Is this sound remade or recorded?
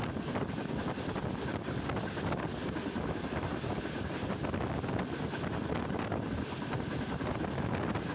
recorded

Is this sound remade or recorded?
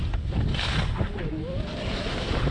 recorded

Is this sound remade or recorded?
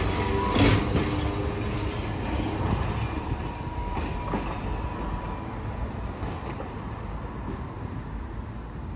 recorded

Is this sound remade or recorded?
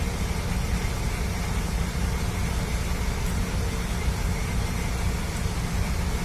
recorded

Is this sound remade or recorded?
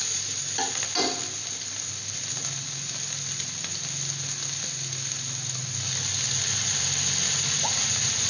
recorded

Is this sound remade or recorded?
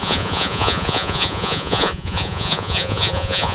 remade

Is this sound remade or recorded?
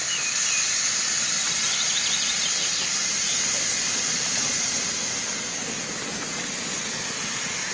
recorded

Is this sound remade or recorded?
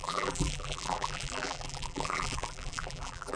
remade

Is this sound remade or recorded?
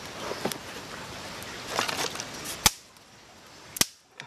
recorded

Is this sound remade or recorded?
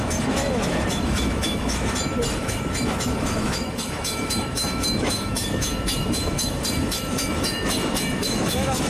remade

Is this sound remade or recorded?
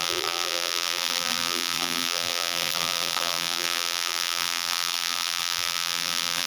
remade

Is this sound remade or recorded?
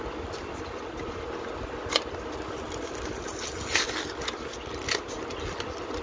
recorded